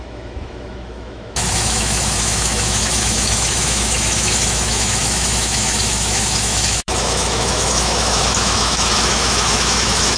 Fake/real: fake